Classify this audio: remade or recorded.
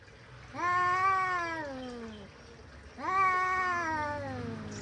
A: recorded